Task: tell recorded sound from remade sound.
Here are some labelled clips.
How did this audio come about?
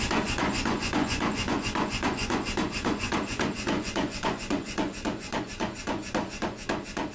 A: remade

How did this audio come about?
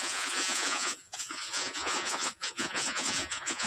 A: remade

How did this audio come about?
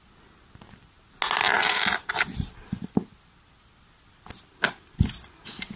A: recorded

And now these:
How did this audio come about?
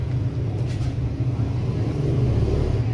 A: recorded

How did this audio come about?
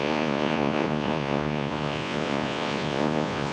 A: remade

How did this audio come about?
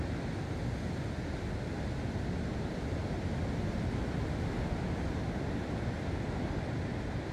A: recorded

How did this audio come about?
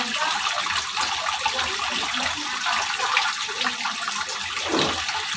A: recorded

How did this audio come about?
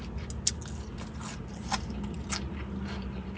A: recorded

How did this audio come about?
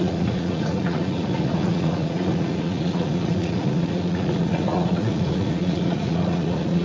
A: remade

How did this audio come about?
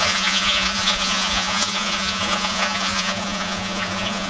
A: remade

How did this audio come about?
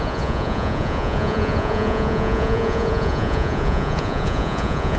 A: remade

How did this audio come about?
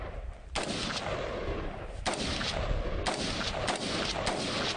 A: recorded